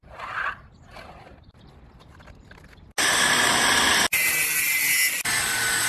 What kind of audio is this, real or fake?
real